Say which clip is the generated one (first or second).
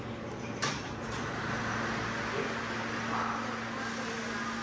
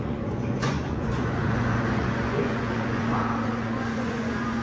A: second